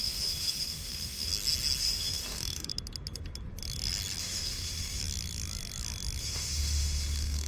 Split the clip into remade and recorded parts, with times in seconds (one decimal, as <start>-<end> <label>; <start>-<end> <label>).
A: 0.0-1.3 remade; 1.3-1.8 recorded; 1.8-2.7 remade; 2.7-4.2 recorded; 4.2-5.0 remade; 5.0-6.2 recorded; 6.2-7.5 remade